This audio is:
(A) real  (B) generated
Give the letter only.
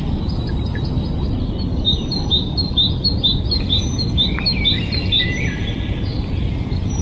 A